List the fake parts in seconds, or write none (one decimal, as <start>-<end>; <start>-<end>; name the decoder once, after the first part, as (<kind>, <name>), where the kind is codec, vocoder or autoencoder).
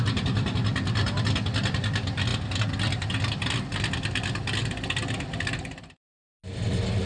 none